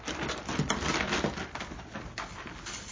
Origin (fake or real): real